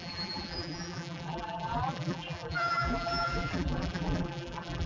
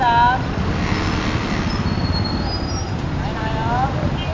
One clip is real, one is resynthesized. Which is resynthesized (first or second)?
first